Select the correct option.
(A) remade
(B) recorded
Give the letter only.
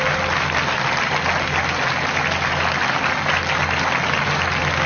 B